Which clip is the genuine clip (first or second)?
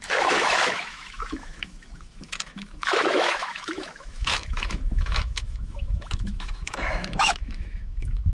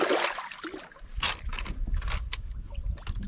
second